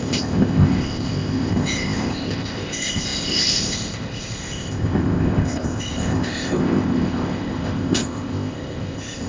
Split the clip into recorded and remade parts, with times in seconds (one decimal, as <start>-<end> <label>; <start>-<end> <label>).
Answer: 0.0-9.3 remade